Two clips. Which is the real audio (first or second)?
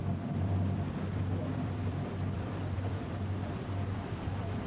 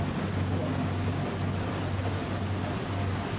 second